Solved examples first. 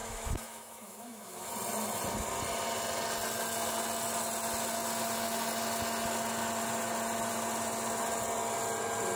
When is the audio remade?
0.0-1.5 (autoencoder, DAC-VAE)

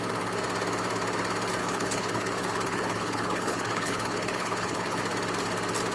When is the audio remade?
1.6-5.0 (codec, HILCodec)

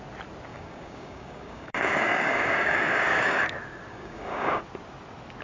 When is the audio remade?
0.5-3.4 (codec, DAC); 3.9-4.6

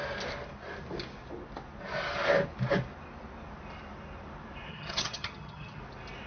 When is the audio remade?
4.7-5.8 (vocoder, HiFi-GAN)

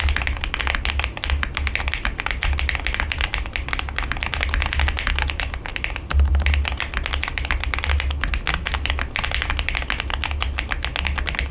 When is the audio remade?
none